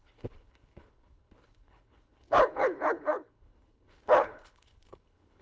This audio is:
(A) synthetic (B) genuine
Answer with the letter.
A